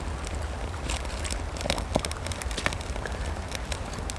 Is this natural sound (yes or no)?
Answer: yes